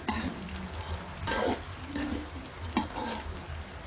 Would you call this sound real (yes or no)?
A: no